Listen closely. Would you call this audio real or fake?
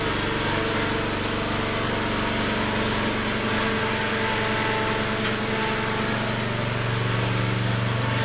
real